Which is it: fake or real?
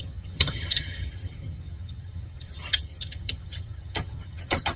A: fake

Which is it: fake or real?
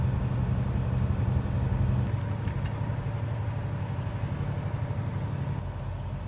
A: real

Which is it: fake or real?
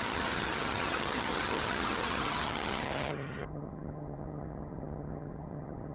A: fake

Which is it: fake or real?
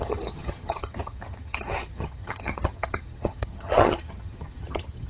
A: fake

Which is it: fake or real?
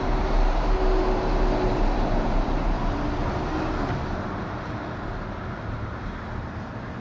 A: real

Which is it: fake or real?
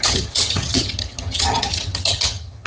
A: fake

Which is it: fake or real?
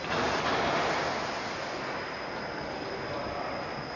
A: real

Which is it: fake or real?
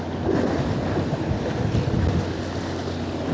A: real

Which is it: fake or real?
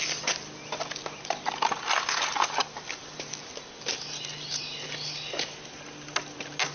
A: real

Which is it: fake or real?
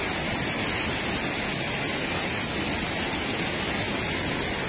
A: real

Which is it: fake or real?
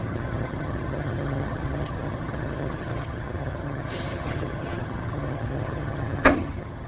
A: fake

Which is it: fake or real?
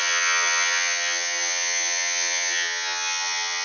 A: fake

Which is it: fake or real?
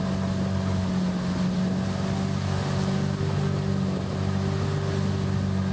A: real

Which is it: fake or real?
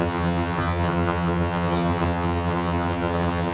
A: fake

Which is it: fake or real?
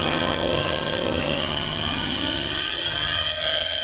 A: fake